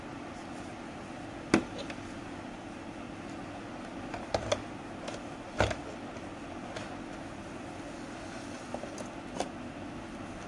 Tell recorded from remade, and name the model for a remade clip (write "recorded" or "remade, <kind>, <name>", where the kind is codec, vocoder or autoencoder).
recorded